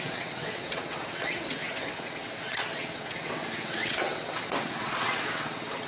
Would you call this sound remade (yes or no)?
yes